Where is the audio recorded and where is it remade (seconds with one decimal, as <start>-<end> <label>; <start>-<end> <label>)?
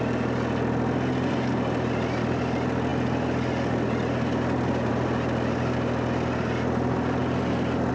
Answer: 0.0-7.9 recorded